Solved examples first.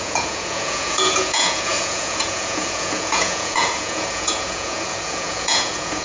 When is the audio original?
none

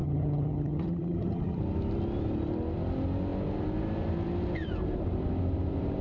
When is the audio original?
1.6-6.0

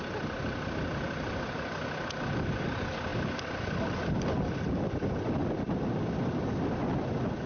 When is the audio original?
0.0-3.1; 6.4-7.5